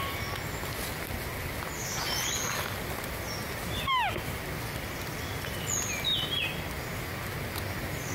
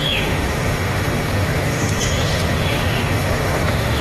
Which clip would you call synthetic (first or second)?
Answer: second